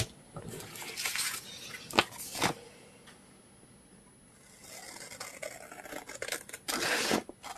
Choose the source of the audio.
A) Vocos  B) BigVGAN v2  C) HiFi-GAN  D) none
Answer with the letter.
D